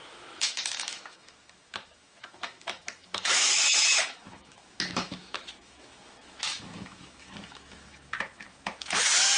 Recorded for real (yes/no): no